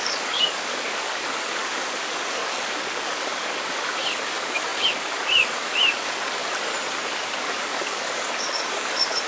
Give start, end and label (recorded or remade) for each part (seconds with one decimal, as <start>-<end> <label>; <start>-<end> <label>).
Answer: 0.0-6.4 remade; 6.4-7.4 recorded; 7.4-9.3 remade